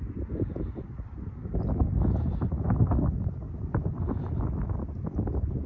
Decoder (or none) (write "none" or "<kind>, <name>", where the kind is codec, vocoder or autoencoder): none